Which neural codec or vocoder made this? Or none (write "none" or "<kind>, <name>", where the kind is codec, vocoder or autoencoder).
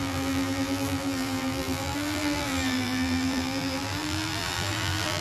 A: vocoder, BigVGAN v2